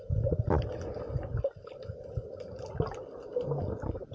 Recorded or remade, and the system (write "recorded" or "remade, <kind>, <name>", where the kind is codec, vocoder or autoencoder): recorded